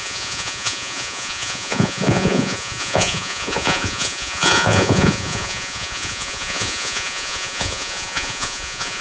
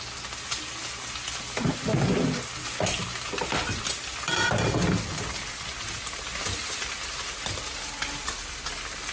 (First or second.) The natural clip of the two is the second